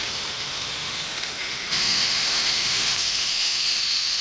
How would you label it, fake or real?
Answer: fake